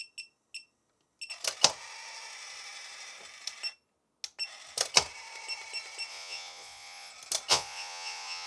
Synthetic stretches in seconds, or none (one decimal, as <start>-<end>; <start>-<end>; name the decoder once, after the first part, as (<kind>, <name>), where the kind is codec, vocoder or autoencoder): 6.1-7.1 (vocoder, Vocos); 7.5-8.5